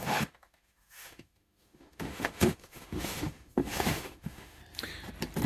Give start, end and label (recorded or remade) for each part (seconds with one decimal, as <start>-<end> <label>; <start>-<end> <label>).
0.0-4.6 remade; 4.6-5.5 recorded